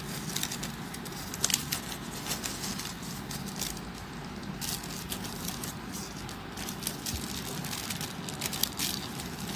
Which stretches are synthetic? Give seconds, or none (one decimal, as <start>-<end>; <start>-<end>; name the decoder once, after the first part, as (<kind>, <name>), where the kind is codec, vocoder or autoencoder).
none